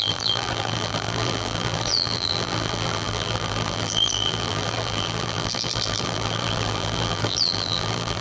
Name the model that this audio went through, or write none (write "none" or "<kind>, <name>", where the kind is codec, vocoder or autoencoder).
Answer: vocoder, BigVGAN v2